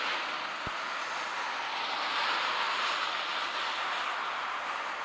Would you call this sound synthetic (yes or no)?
no